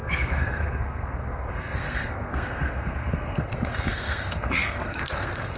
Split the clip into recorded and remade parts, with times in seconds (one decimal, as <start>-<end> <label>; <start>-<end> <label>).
0.0-5.6 remade